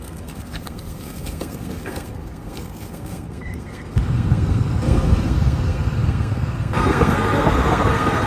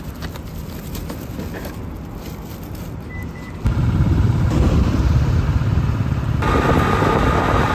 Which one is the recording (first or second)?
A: second